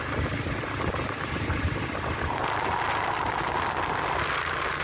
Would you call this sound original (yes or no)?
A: yes